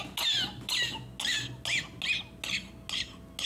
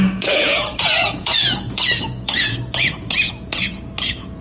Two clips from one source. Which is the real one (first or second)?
first